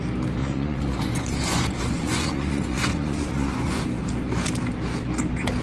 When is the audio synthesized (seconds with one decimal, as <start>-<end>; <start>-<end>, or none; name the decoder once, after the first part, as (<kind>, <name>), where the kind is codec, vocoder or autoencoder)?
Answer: 0.4-3.8 (vocoder, Vocos)